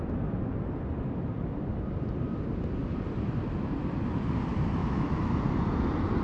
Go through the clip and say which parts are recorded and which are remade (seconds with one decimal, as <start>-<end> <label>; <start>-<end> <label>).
0.0-4.8 recorded; 4.8-5.3 remade; 5.3-6.2 recorded